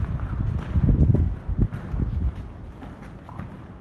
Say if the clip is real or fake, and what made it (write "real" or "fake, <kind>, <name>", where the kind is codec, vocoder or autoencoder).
real